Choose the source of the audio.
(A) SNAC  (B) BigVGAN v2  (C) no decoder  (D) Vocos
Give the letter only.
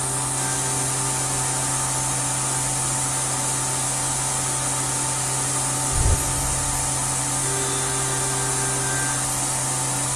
C